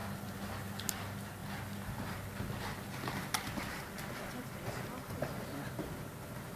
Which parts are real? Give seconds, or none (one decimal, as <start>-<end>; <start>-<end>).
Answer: 0.0-1.4; 2.3-6.6